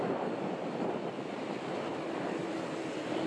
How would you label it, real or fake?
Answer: real